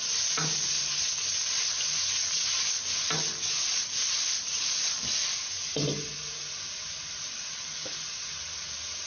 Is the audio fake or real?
real